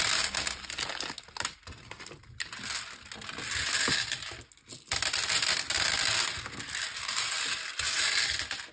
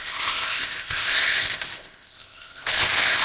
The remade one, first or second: second